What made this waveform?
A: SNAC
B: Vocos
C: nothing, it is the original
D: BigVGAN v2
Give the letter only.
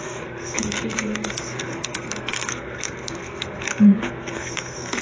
A